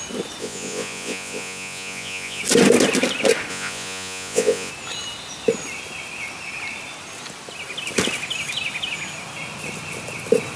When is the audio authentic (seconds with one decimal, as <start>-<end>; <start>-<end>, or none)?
0.0-0.4; 2.4-3.5; 4.7-10.6